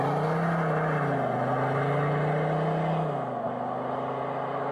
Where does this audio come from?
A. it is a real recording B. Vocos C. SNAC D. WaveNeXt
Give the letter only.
A